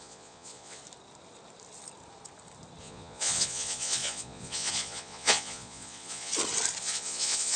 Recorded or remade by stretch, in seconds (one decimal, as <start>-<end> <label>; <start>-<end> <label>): 0.0-0.8 remade; 0.8-2.8 recorded; 2.8-6.3 remade; 6.3-6.8 recorded; 6.8-7.6 remade